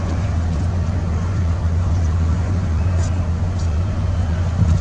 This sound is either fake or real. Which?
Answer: fake